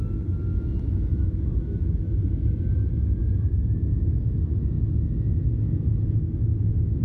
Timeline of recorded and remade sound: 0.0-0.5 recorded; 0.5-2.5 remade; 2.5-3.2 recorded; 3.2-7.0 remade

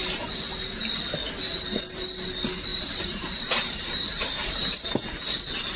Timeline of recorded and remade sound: 0.0-2.7 recorded; 2.7-4.9 remade; 4.9-5.8 recorded

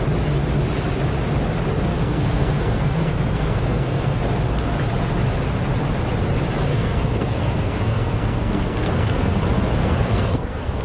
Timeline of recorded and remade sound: 0.0-1.9 recorded; 1.9-4.2 remade; 4.2-6.7 recorded; 6.7-9.4 remade; 9.4-9.8 recorded; 9.8-10.8 remade

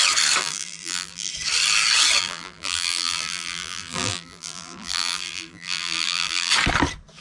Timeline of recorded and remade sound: 0.0-0.4 recorded; 0.4-1.3 remade; 1.3-2.2 recorded; 2.2-6.5 remade; 6.5-7.2 recorded

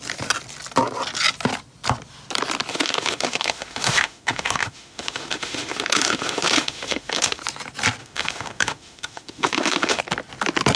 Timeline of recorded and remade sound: 0.0-2.7 recorded; 2.7-7.4 remade; 7.4-8.0 recorded; 8.0-10.0 remade; 10.0-10.8 recorded

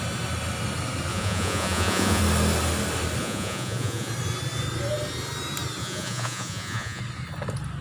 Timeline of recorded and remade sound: 0.0-1.1 recorded; 1.1-2.2 remade; 2.2-3.2 recorded; 3.2-4.1 remade; 4.1-5.8 recorded; 5.8-7.0 remade; 7.0-7.8 recorded

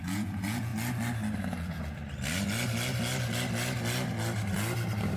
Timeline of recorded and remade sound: 0.0-0.7 remade; 0.7-1.4 recorded; 1.4-2.0 remade; 2.0-5.2 recorded